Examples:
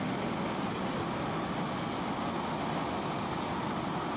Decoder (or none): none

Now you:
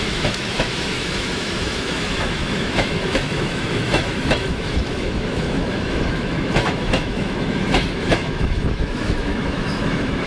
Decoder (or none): autoencoder, DAC-VAE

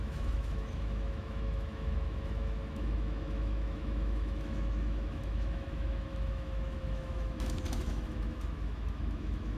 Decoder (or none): autoencoder, DAC-VAE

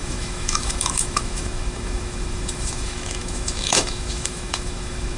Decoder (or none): autoencoder, DAC-VAE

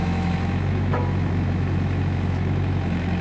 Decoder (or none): autoencoder, DAC-VAE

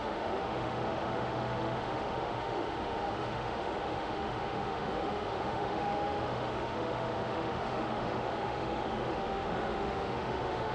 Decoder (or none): autoencoder, DAC-VAE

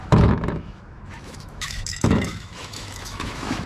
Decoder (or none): autoencoder, DAC-VAE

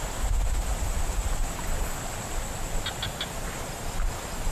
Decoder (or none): none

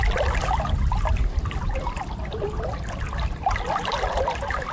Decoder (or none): none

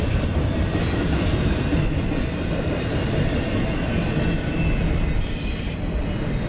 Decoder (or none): none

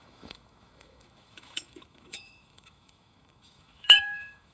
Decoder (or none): autoencoder, DAC-VAE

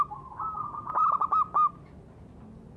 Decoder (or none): none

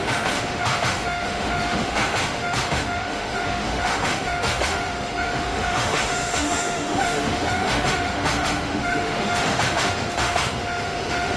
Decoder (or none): autoencoder, DAC-VAE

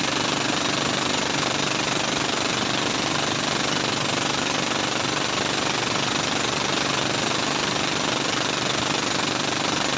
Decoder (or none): none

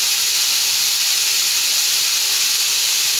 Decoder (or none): none